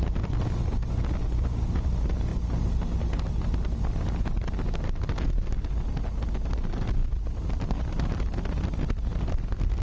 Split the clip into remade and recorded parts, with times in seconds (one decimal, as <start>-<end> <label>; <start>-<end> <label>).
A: 0.0-9.8 recorded